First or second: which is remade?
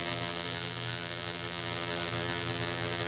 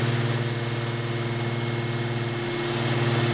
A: first